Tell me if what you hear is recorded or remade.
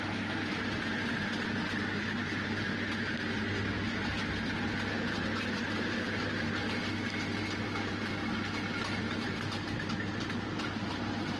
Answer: recorded